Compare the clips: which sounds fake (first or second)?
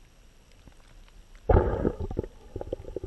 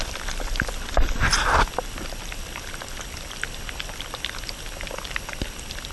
second